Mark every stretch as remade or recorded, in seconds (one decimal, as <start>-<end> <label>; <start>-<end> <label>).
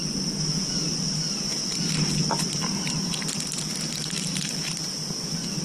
0.0-2.2 recorded; 2.2-5.6 remade